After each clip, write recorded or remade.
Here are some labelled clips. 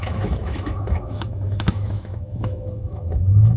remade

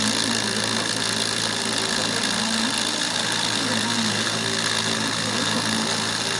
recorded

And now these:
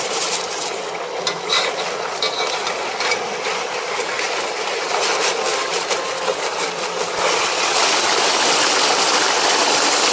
recorded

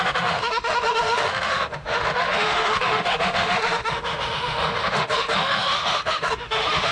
remade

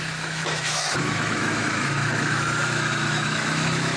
remade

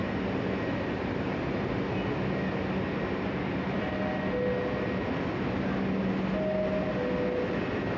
recorded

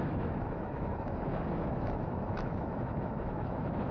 remade